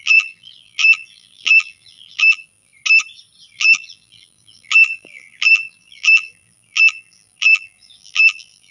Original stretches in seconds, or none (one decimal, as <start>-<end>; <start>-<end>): 2.7-3.5